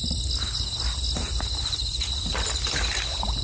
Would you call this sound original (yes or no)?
yes